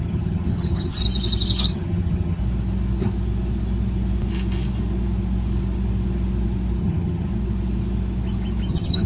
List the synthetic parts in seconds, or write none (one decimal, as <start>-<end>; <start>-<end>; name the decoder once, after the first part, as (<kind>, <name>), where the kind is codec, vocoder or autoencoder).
0.0-1.0 (vocoder, HiFi-GAN); 1.7-2.4; 6.8-7.3; 8.7-9.1